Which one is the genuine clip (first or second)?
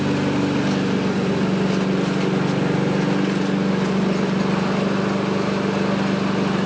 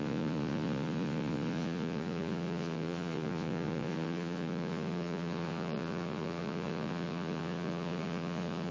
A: first